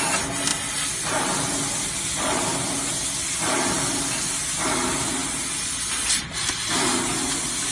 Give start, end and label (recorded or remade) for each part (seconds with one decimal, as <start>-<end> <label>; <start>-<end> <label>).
0.0-7.7 recorded